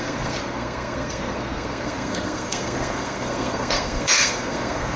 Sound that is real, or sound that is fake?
fake